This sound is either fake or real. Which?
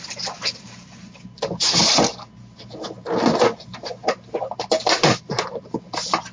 real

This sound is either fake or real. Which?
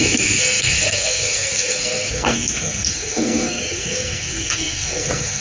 fake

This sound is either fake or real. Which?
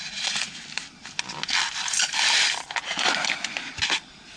real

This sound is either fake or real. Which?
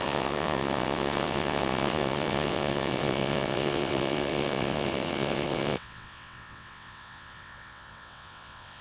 fake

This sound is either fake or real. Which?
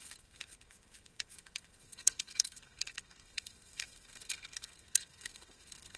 fake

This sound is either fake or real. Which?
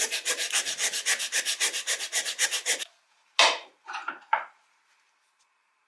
fake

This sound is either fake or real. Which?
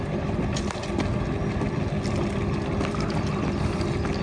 real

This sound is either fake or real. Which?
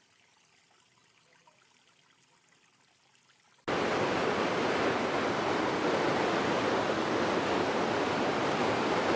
real